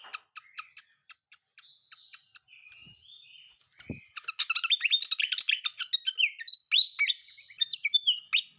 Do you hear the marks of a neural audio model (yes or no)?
no